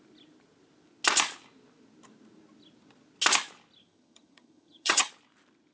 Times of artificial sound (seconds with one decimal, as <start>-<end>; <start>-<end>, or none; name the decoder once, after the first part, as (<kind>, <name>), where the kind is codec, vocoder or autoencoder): 3.8-5.1 (vocoder, HiFi-GAN)